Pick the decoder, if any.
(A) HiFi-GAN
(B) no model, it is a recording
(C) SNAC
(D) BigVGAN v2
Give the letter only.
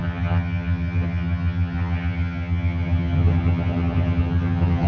A